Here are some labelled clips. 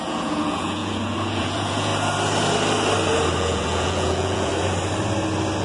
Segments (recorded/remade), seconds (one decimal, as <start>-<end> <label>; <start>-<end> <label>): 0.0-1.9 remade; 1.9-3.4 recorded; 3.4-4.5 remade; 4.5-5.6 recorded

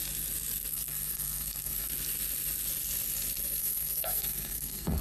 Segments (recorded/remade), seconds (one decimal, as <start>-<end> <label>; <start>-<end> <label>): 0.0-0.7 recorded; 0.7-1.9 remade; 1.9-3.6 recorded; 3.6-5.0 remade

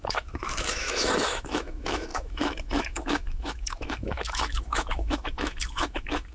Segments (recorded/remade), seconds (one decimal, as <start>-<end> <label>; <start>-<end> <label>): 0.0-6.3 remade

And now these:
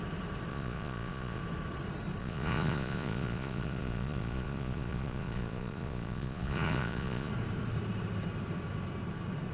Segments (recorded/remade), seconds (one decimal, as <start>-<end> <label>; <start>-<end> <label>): 0.0-0.5 recorded; 0.5-1.4 remade; 1.4-2.2 recorded; 2.2-7.3 remade; 7.3-9.5 recorded

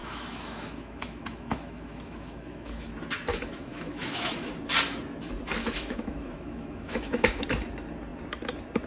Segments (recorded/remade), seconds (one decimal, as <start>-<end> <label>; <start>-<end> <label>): 0.0-2.9 remade; 2.9-3.3 recorded; 3.3-4.5 remade; 4.5-5.6 recorded; 5.6-7.4 remade; 7.4-8.9 recorded

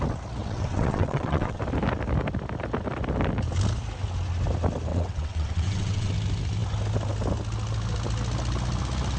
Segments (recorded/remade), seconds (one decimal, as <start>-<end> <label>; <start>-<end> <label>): 0.0-0.4 recorded; 0.4-1.6 remade; 1.6-4.9 recorded; 4.9-6.1 remade; 6.1-9.2 recorded